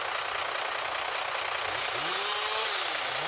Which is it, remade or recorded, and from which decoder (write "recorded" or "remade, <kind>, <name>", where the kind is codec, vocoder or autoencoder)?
recorded